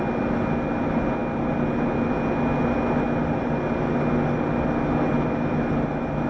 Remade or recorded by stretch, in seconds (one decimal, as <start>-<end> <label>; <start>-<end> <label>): 0.0-6.3 recorded